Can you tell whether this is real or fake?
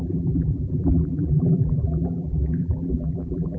fake